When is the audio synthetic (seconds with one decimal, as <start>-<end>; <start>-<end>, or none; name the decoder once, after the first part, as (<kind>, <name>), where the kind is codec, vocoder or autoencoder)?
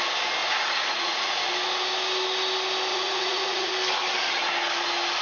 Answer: 0.4-1.4 (vocoder, Vocos); 2.9-3.7